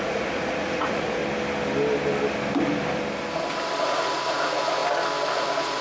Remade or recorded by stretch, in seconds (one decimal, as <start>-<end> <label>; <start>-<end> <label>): 0.0-1.2 remade; 1.2-3.8 recorded; 3.8-4.8 remade; 4.8-5.3 recorded; 5.3-5.8 remade